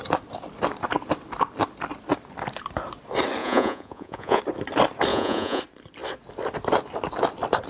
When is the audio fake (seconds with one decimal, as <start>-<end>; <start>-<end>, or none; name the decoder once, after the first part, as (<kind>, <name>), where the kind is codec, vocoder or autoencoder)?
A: 3.4-4.4 (vocoder, Vocos); 5.1-5.6